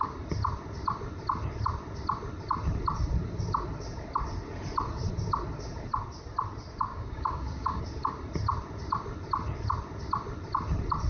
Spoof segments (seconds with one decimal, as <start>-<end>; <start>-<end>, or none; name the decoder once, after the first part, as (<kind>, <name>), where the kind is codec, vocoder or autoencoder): 6.9-7.8 (codec, DAC)